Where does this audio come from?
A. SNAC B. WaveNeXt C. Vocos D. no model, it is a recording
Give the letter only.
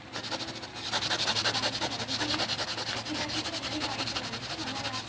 D